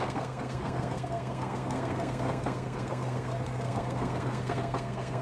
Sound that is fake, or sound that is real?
fake